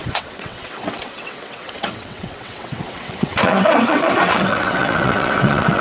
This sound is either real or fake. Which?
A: fake